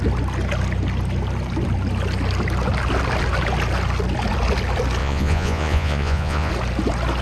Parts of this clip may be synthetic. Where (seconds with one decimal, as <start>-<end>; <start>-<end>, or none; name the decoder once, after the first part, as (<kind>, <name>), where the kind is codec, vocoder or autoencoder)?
5.0-6.5 (vocoder, Vocos)